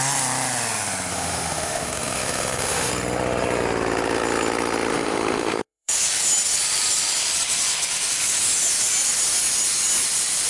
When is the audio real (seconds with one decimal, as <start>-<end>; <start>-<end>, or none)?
0.0-1.1; 2.9-4.9; 6.0-10.5